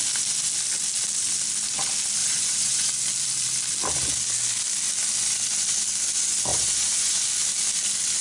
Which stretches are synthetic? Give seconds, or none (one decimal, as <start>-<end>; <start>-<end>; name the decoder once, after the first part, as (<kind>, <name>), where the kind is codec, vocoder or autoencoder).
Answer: 2.2-2.9 (vocoder, Vocos); 6.5-7.2